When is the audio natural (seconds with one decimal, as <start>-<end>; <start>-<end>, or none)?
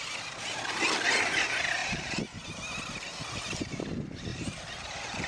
0.0-1.8; 2.5-4.3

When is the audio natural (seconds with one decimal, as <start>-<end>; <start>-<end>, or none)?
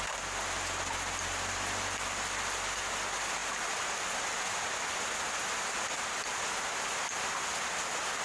0.0-8.2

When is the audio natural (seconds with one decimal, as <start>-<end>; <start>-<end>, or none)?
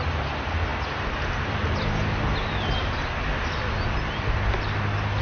0.0-5.2